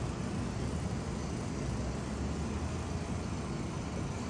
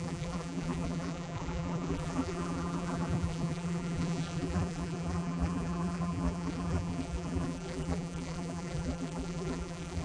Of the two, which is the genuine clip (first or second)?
first